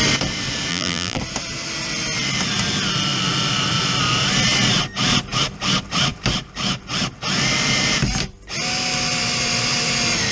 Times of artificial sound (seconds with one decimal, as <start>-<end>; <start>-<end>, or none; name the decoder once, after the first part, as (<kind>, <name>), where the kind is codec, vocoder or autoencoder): 0.7-1.2 (vocoder, BigVGAN v2)